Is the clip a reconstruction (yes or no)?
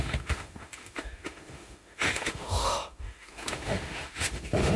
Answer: yes